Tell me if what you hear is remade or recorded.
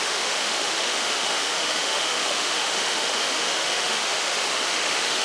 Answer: remade